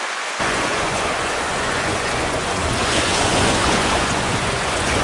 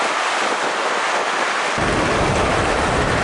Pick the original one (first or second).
second